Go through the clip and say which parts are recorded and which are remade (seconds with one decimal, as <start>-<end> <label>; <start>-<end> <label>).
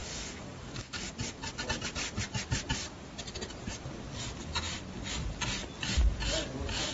0.0-1.1 remade; 1.1-6.9 recorded